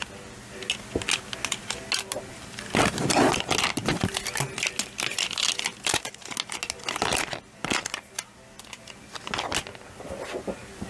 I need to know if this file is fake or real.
real